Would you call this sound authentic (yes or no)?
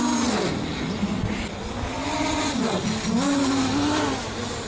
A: yes